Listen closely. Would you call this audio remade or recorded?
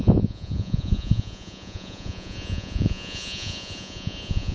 remade